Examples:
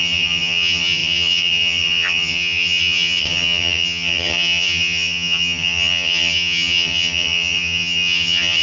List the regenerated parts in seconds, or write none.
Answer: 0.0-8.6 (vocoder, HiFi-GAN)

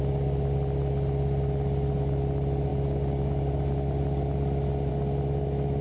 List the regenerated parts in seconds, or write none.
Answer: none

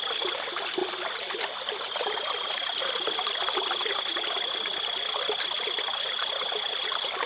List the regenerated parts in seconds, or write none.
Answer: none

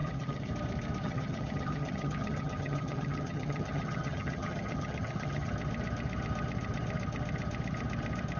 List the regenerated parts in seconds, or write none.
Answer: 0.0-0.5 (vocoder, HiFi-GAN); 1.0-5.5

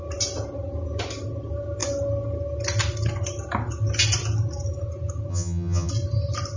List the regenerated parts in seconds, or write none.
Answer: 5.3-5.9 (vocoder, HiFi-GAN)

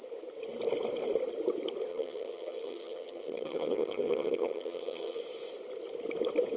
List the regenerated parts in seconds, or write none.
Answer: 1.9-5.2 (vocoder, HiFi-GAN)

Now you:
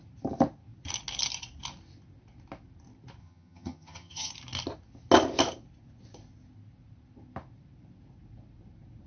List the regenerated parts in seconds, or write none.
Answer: 3.2-4.3 (vocoder, HiFi-GAN)

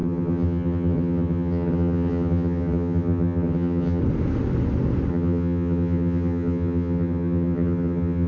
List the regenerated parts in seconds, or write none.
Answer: 0.0-4.0 (vocoder, HiFi-GAN); 5.1-8.3